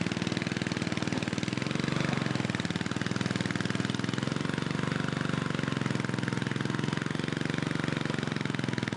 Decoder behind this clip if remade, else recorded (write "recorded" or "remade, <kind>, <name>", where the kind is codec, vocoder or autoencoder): recorded